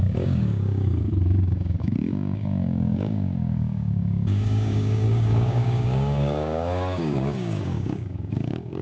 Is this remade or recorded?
remade